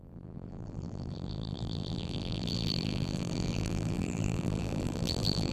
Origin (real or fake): fake